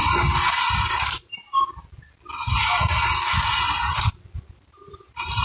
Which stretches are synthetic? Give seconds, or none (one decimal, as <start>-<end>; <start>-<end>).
0.6-1.8; 4.3-5.4

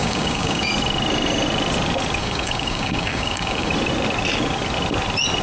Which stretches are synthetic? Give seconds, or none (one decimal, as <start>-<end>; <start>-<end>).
0.0-0.7; 2.2-3.7